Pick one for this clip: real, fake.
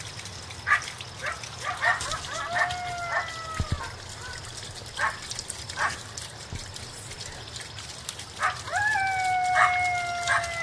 real